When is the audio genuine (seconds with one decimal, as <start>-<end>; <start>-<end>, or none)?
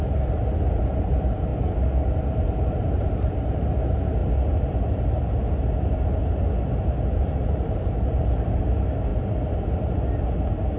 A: 4.2-4.9; 6.2-7.2; 9.1-10.8